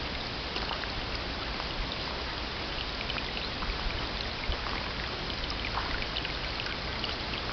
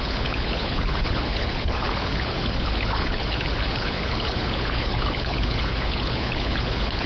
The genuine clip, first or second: first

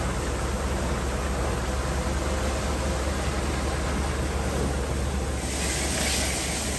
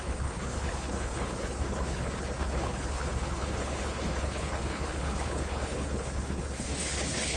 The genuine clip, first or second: first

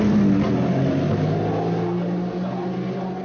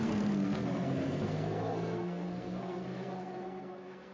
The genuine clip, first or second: first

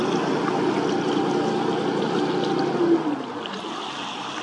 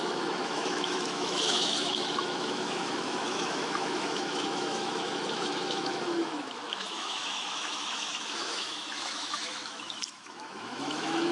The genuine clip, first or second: first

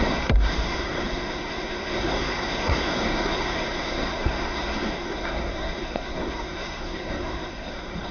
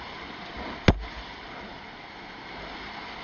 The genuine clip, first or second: second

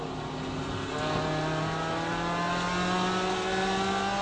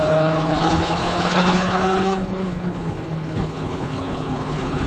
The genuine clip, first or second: first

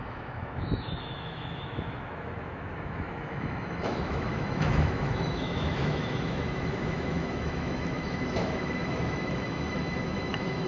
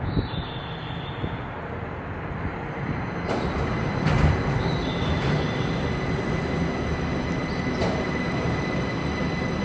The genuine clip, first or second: second